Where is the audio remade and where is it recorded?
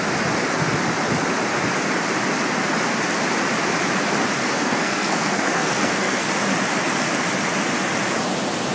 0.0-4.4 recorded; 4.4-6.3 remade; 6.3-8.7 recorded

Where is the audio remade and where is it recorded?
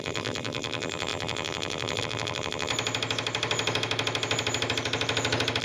0.0-2.7 remade; 2.7-5.6 recorded